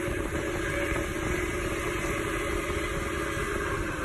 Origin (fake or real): real